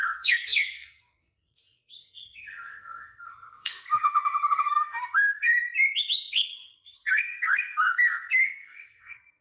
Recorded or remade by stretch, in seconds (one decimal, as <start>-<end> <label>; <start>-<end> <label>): 0.0-5.5 remade; 5.5-6.3 recorded; 6.3-9.4 remade